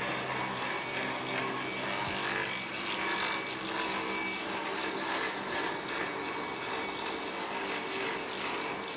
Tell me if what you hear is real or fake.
real